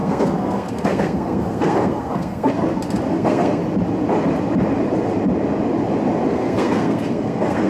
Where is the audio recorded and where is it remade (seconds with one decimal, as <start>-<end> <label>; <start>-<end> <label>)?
0.0-2.6 remade; 2.6-3.1 recorded; 3.1-3.6 remade; 3.6-6.3 recorded; 6.3-7.7 remade